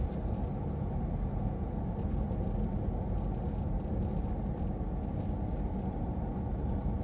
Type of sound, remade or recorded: recorded